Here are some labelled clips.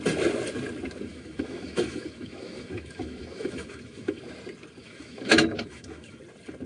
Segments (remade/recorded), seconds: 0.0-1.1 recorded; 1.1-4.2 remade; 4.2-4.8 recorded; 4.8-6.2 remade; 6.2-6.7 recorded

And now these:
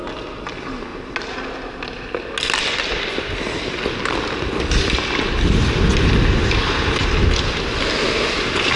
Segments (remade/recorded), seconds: 0.0-8.8 recorded